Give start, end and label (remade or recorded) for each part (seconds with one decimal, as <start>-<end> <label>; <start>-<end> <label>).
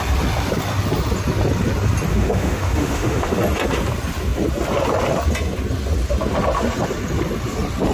0.0-2.1 recorded; 2.1-3.4 remade; 3.4-7.9 recorded